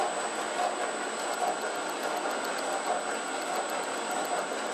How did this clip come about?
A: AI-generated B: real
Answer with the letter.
B